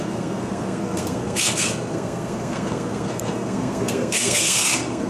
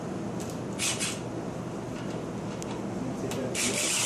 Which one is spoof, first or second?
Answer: first